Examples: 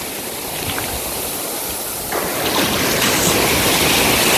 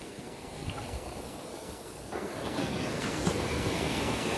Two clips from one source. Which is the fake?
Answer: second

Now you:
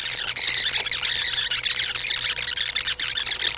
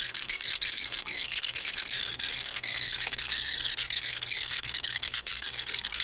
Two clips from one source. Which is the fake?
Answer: second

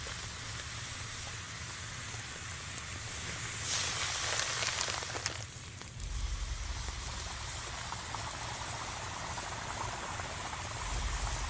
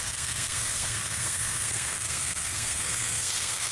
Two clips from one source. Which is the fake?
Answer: second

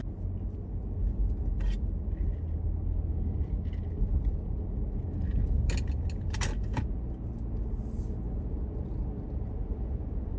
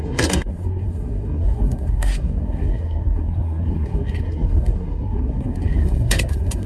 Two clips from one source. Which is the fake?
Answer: second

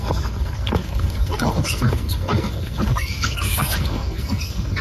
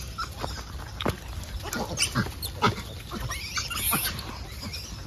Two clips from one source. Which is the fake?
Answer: first